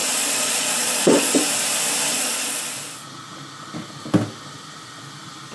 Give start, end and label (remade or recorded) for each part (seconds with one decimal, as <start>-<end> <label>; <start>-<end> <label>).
0.0-1.4 remade; 1.4-2.1 recorded; 2.1-2.6 remade; 2.6-5.5 recorded